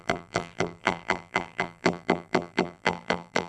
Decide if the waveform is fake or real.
fake